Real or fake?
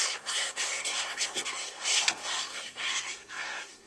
fake